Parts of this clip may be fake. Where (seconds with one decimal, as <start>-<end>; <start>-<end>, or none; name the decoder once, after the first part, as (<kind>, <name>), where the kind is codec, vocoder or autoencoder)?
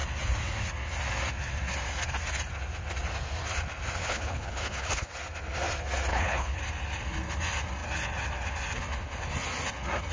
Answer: 4.0-5.1 (codec, HILCodec); 6.1-6.6